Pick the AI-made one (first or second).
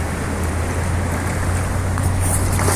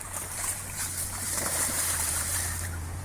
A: second